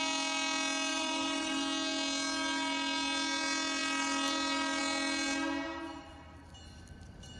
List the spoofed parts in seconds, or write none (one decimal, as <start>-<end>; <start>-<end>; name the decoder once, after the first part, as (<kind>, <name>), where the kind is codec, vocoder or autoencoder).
0.9-1.6 (vocoder, BigVGAN v2)

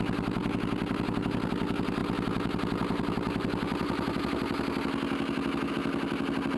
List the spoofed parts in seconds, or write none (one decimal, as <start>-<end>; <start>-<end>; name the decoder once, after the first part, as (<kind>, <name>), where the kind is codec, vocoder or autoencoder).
none

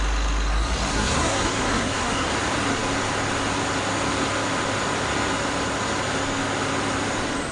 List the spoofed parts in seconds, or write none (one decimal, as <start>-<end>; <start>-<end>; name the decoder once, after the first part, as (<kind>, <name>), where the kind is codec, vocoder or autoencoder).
0.9-2.3 (codec, SNAC)

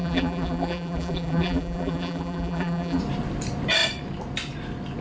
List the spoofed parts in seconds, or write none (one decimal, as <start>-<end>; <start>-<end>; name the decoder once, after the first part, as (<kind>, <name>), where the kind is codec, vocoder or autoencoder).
0.0-3.0 (vocoder, BigVGAN v2)

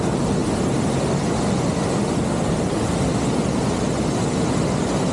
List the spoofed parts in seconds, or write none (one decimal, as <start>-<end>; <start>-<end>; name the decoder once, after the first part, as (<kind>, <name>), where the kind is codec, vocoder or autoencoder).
none

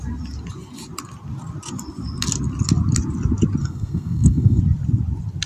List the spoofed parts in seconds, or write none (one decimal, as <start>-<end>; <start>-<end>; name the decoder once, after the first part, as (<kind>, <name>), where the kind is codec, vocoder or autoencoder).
3.6-4.6 (codec, SNAC)